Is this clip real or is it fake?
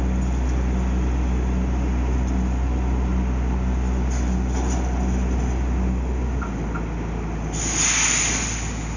real